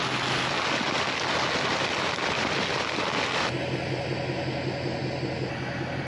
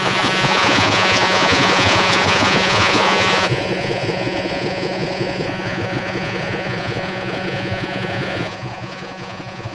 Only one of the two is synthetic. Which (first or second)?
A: second